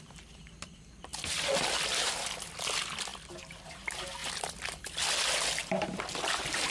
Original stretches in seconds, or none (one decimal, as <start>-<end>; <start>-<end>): 0.0-6.7